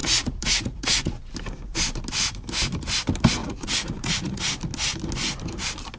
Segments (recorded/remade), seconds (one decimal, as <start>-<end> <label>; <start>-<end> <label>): 0.0-1.2 remade; 1.2-3.4 recorded; 3.4-4.4 remade; 4.4-6.0 recorded